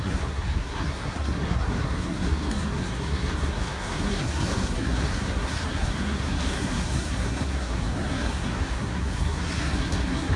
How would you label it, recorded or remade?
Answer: remade